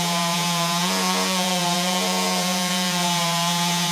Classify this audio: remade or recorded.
remade